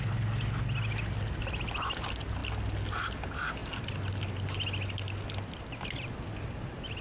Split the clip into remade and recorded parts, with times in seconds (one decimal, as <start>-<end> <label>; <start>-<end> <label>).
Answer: 0.0-7.0 recorded